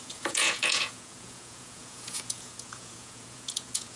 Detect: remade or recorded remade